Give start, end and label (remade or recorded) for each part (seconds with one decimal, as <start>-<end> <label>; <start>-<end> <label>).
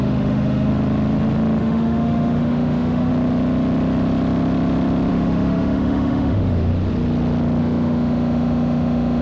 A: 0.0-0.7 remade; 0.7-1.6 recorded; 1.6-3.1 remade; 3.1-5.1 recorded; 5.1-6.7 remade; 6.7-7.6 recorded; 7.6-9.2 remade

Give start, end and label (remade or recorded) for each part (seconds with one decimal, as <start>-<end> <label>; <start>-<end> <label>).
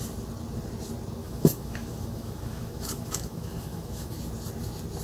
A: 0.0-1.2 recorded; 1.2-4.2 remade; 4.2-5.0 recorded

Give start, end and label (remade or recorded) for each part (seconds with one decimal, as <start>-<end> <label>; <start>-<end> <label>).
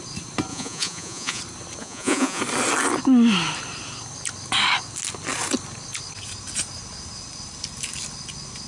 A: 0.0-0.5 recorded; 0.5-1.4 remade; 1.4-1.8 recorded; 1.8-2.4 remade; 2.4-8.7 recorded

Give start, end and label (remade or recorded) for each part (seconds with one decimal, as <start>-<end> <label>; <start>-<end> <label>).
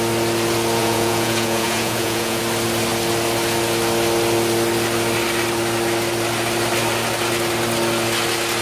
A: 0.0-0.8 recorded; 0.8-2.4 remade; 2.4-8.6 recorded